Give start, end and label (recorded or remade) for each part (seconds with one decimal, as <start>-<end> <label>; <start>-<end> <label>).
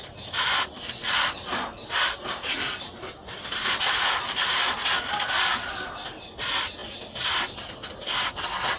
0.0-8.8 recorded